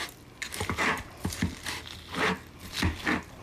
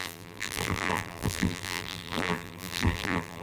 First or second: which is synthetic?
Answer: second